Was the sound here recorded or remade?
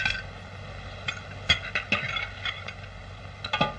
recorded